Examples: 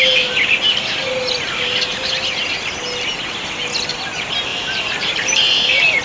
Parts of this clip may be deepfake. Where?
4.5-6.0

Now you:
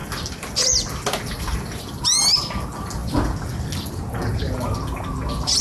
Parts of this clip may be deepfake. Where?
none

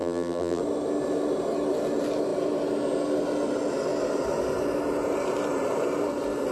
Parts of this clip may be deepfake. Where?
0.0-0.6